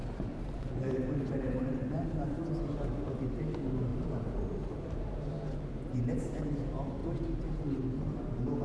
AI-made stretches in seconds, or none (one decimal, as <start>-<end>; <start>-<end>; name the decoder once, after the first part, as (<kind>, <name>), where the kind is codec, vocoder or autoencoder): 0.0-2.4 (vocoder, BigVGAN v2); 3.9-6.2; 7.0-7.8